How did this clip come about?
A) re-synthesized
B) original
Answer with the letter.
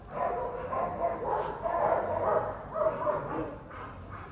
B